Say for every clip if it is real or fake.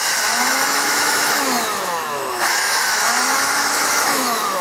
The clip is fake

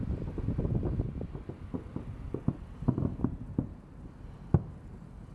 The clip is real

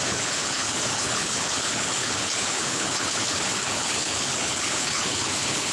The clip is fake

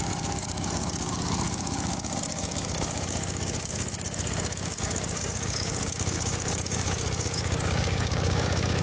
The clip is fake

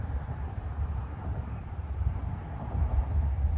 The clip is fake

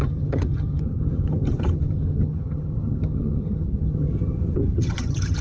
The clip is fake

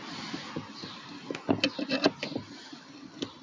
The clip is real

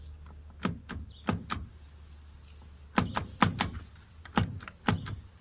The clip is real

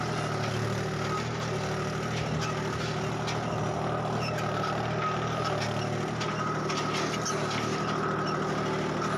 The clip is real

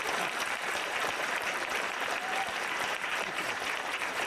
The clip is fake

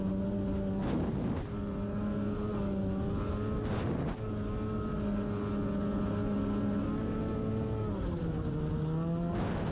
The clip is real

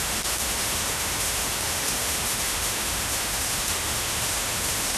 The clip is fake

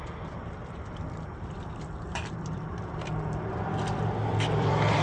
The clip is fake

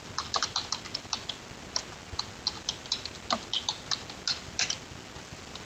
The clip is real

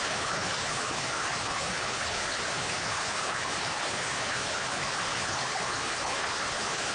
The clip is fake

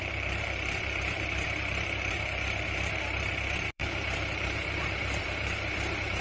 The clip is fake